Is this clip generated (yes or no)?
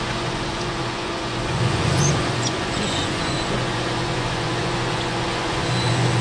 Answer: yes